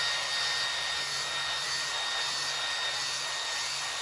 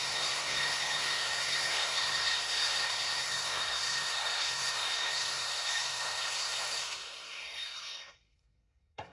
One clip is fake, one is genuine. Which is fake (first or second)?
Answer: second